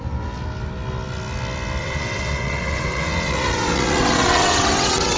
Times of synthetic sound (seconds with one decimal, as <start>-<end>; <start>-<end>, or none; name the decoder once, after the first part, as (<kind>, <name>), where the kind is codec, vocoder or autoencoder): 1.8-5.2 (vocoder, WaveNeXt)